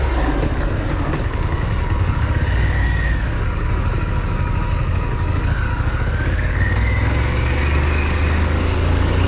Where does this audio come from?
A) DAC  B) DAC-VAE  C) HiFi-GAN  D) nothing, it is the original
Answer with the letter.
A